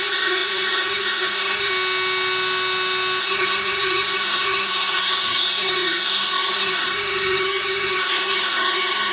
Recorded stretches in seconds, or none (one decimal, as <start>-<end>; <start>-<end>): 1.7-3.2